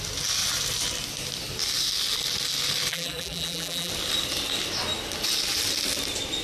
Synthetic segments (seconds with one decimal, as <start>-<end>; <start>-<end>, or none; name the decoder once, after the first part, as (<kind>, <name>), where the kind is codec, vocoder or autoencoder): 2.9-3.9 (vocoder, BigVGAN v2)